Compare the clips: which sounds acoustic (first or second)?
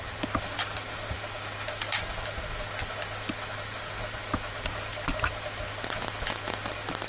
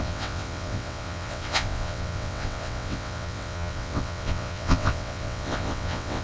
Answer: first